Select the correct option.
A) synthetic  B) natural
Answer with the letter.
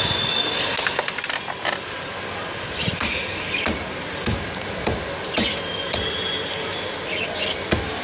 B